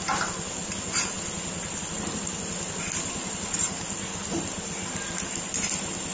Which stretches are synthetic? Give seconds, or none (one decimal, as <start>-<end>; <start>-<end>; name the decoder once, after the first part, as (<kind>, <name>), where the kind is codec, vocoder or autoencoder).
none